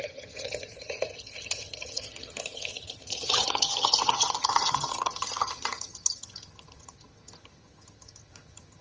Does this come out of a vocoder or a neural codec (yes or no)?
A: yes